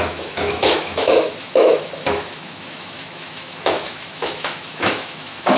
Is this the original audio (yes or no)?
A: no